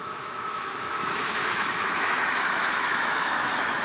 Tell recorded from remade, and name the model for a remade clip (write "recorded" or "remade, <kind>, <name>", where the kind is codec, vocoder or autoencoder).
remade, autoencoder, DAC-VAE